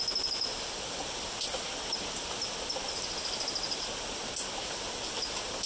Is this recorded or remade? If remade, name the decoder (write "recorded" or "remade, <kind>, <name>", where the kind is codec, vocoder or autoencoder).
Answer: recorded